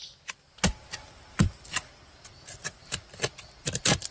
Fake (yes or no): no